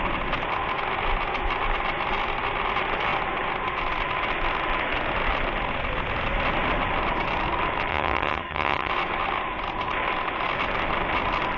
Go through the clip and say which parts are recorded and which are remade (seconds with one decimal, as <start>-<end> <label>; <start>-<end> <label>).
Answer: 0.0-7.9 recorded; 7.9-8.9 remade; 8.9-11.6 recorded